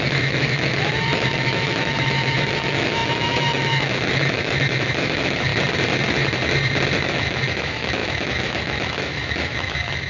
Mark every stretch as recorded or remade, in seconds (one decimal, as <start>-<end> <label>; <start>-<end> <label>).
0.0-5.5 remade; 5.5-7.0 recorded; 7.0-10.1 remade